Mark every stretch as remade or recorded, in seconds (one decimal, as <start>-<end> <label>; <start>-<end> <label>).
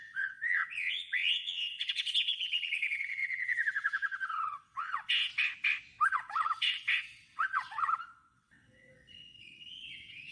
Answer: 0.0-5.3 remade; 5.3-6.1 recorded; 6.1-10.3 remade